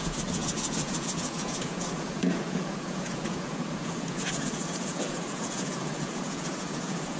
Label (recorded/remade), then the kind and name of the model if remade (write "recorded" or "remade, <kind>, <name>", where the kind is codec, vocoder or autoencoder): remade, vocoder, Vocos